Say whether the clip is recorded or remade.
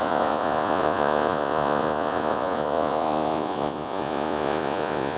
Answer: remade